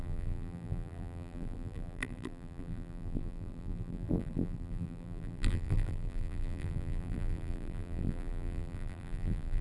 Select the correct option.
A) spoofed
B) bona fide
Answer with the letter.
A